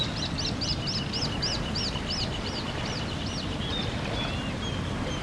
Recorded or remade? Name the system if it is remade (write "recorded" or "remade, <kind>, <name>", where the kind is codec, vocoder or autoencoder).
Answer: recorded